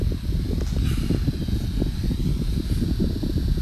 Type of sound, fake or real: real